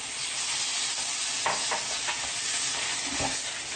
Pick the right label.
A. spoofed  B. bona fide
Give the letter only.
B